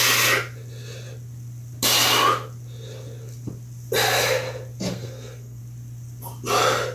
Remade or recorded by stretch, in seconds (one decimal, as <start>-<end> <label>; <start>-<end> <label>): 0.0-4.9 recorded; 4.9-5.6 remade; 5.6-6.9 recorded